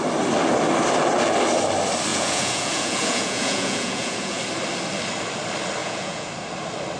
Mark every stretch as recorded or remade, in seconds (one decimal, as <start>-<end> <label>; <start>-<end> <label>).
0.0-2.1 recorded; 2.1-4.4 remade; 4.4-5.8 recorded; 5.8-6.3 remade; 6.3-7.0 recorded